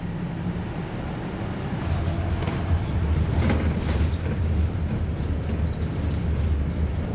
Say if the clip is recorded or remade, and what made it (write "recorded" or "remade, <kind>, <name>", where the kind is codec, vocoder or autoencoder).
recorded